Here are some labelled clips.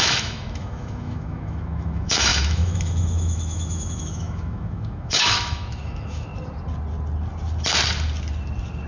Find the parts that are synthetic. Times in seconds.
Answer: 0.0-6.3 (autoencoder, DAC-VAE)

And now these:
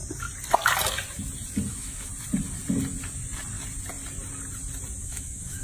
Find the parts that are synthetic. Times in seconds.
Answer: 1.7-2.1 (autoencoder, DAC-VAE); 5.0-5.6

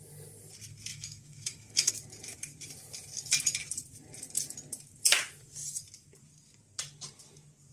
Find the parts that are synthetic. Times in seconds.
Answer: 0.9-1.9 (autoencoder, DAC-VAE)

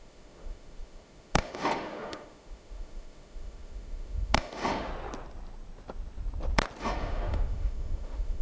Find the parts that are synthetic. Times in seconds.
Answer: 0.0-4.9 (autoencoder, DAC-VAE); 6.8-8.4

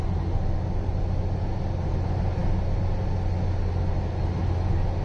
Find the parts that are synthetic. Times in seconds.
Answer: none

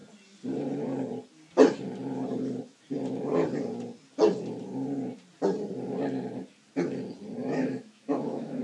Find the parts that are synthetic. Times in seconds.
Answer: 7.4-8.6 (autoencoder, DAC-VAE)